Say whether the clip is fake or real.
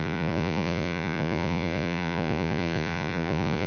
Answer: fake